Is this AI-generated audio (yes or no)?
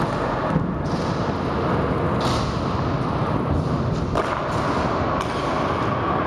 no